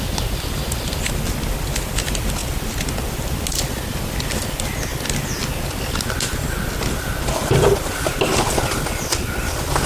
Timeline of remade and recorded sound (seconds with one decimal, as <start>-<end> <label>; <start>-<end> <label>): 0.0-9.9 recorded